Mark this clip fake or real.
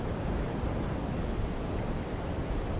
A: fake